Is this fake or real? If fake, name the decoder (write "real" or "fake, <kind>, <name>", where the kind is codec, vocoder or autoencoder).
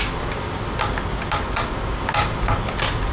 real